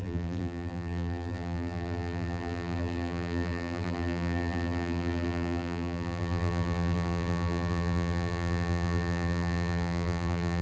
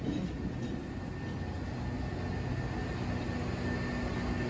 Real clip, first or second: second